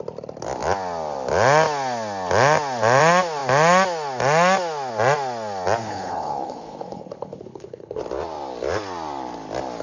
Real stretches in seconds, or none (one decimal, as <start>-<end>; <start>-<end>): 0.0-5.8; 8.0-9.8